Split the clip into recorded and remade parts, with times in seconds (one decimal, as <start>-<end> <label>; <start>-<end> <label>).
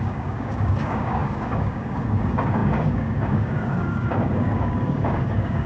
0.0-5.7 remade